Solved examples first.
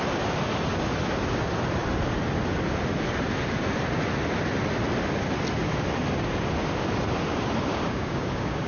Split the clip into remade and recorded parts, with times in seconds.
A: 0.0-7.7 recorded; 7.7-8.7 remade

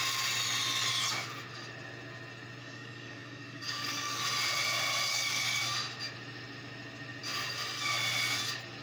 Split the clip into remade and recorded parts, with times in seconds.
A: 0.0-2.6 recorded; 2.6-4.2 remade; 4.2-5.1 recorded; 5.1-5.6 remade; 5.6-8.8 recorded

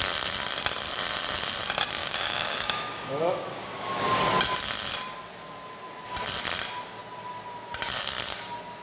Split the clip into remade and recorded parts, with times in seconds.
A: 0.0-2.0 recorded; 2.0-4.0 remade; 4.0-8.8 recorded

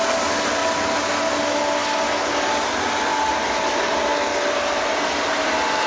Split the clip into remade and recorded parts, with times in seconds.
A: 0.0-5.9 recorded